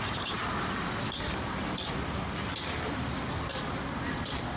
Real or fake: fake